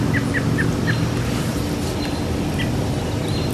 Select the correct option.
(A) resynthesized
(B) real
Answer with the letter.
B